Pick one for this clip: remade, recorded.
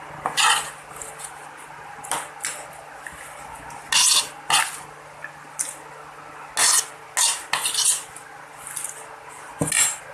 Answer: recorded